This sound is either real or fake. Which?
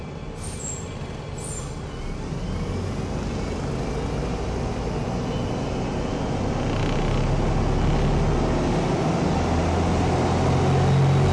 real